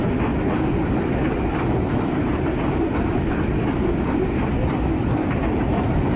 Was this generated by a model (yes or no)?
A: yes